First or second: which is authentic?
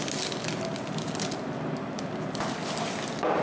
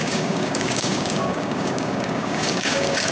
first